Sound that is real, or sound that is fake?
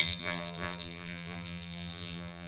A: fake